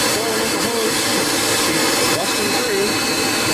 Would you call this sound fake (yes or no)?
no